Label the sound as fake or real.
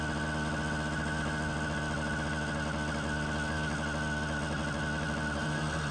real